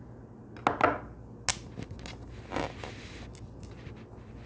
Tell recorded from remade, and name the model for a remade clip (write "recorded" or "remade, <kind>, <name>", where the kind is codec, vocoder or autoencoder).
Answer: recorded